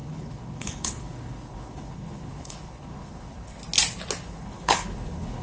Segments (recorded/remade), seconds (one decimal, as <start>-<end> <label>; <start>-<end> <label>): 0.0-3.6 remade; 3.6-4.2 recorded; 4.2-5.4 remade